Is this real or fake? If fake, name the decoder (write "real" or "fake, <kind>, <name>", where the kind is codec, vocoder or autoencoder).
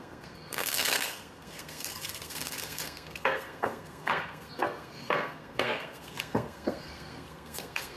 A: fake, codec, SNAC